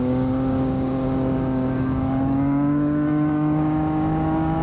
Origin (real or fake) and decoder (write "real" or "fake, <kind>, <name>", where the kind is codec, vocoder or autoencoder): fake, codec, DAC